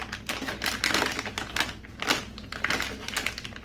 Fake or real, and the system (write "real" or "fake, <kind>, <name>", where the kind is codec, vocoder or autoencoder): real